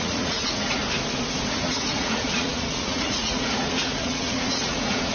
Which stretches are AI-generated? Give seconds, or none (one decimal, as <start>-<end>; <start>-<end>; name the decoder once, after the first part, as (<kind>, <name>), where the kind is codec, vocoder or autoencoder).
0.0-0.8 (vocoder, Vocos); 1.5-5.1